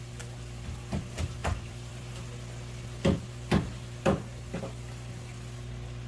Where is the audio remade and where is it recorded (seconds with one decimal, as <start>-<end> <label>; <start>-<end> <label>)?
0.0-1.4 recorded; 1.4-2.1 remade; 2.1-6.1 recorded